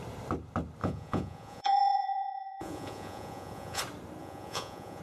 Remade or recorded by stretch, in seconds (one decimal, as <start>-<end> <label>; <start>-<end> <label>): 0.0-0.8 recorded; 0.8-3.8 remade; 3.8-4.2 recorded; 4.2-5.0 remade